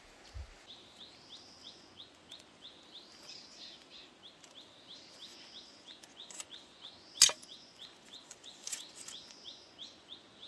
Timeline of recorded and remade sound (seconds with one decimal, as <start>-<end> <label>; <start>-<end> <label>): 0.0-1.6 recorded; 1.6-2.8 remade; 2.8-5.3 recorded; 5.3-10.5 remade